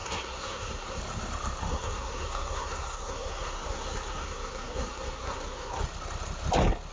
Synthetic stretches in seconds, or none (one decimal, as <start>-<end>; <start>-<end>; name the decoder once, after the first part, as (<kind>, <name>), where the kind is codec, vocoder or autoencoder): 0.0-1.0 (codec, SNAC); 1.7-5.8

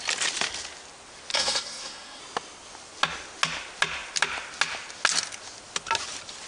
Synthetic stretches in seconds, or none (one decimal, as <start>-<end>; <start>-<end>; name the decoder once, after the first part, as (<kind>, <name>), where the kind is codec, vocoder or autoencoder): 1.3-2.2 (codec, SNAC)